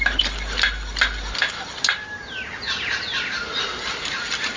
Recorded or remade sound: recorded